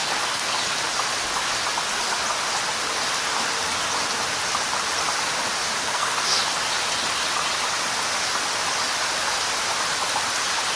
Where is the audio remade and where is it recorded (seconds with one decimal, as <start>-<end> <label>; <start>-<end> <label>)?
0.0-0.5 remade; 0.5-5.8 recorded; 5.8-6.4 remade; 6.4-10.8 recorded

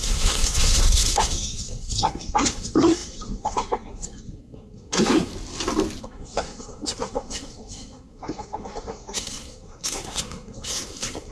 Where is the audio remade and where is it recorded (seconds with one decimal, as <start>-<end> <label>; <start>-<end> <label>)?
0.0-5.3 remade; 5.3-6.0 recorded; 6.0-11.3 remade

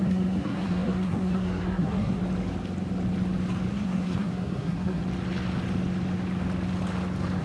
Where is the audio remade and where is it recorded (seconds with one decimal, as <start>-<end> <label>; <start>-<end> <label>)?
0.0-2.2 remade; 2.2-3.7 recorded; 3.7-5.0 remade; 5.0-7.4 recorded

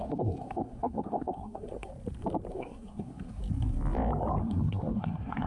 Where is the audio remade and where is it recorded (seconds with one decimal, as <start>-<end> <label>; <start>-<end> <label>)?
0.0-1.9 remade; 1.9-2.5 recorded; 2.5-3.4 remade; 3.4-4.4 recorded; 4.4-5.5 remade

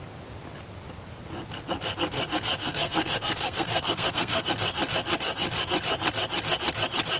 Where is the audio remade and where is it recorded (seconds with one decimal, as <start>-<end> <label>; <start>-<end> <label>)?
0.0-2.6 recorded; 2.6-4.5 remade; 4.5-7.2 recorded